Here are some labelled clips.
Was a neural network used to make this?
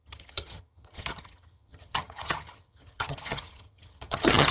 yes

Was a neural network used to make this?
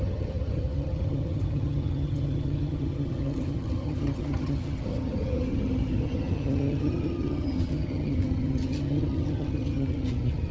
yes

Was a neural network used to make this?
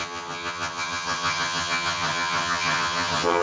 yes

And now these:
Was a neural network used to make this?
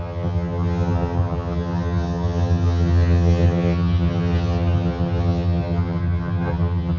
yes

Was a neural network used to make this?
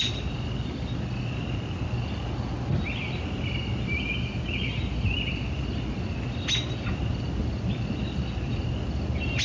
no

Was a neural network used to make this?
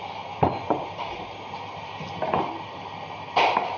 no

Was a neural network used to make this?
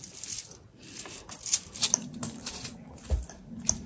no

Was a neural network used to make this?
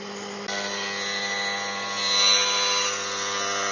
no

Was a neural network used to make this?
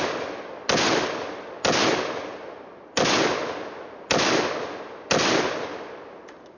no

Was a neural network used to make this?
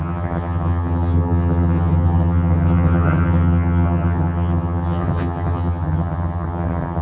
yes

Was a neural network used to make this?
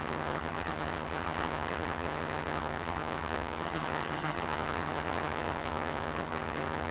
yes